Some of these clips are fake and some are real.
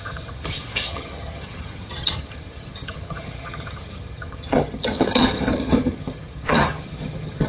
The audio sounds fake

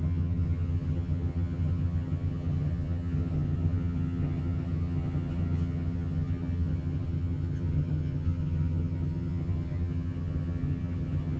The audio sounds fake